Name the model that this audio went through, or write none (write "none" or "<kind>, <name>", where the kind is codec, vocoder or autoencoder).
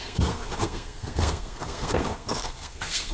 codec, SNAC